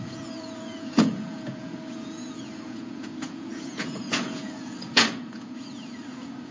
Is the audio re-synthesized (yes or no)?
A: yes